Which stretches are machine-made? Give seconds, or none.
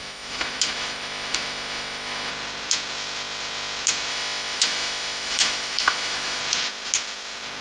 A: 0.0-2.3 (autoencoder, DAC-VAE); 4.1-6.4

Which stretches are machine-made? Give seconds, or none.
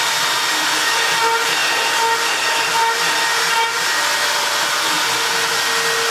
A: none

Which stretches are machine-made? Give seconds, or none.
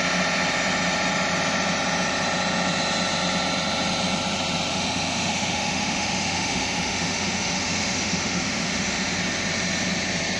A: 4.7-9.2 (autoencoder, DAC-VAE)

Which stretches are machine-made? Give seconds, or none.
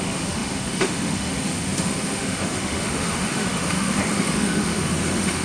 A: 0.0-5.4 (autoencoder, DAC-VAE)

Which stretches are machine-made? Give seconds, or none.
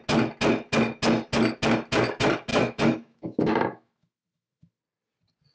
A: 2.5-4.8 (autoencoder, DAC-VAE)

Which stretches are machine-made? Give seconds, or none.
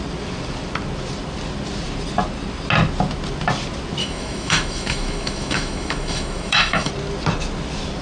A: 4.0-6.9 (autoencoder, DAC-VAE)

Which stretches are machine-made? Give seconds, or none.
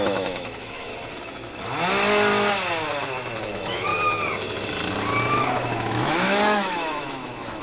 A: 0.0-0.9 (autoencoder, DAC-VAE); 3.4-3.9; 5.4-7.6